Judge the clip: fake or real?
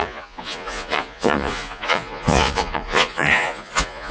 fake